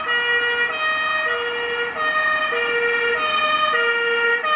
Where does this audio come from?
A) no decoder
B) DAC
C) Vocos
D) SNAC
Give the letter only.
A